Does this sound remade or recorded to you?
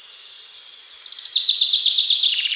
recorded